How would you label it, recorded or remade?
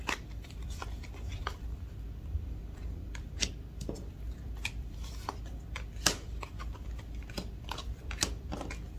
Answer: remade